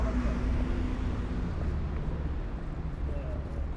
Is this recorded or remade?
recorded